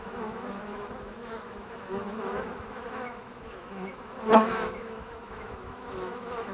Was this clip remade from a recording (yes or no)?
yes